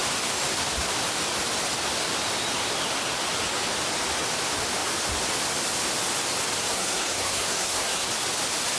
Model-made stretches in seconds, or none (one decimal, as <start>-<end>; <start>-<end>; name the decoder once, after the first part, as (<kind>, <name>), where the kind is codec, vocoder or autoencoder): 6.7-8.1 (codec, SNAC)